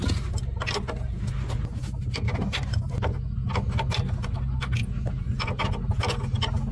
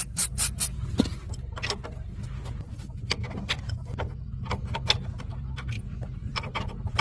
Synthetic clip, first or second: second